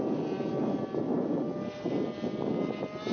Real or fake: real